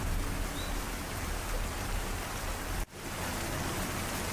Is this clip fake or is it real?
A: real